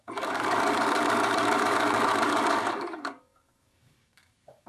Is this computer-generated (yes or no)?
yes